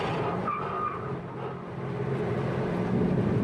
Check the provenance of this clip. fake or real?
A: real